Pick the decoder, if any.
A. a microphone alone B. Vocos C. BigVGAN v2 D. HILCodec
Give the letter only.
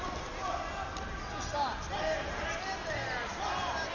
A